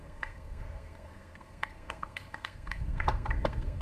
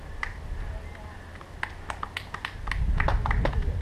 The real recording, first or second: second